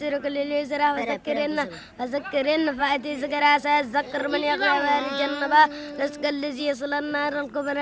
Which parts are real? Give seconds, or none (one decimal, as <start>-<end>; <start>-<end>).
0.0-1.0; 1.5-7.8